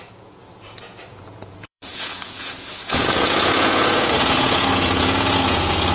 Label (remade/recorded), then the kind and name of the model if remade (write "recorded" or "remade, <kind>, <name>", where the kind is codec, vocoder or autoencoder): remade, vocoder, Vocos